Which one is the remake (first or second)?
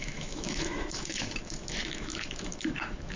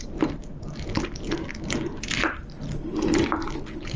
first